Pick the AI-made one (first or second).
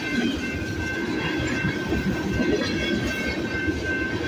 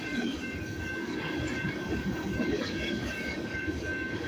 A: second